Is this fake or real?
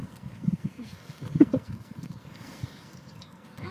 fake